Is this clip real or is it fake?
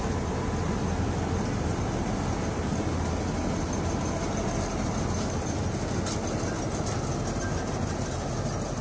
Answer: real